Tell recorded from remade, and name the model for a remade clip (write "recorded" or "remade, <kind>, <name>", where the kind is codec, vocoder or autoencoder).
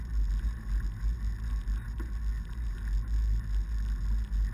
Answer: recorded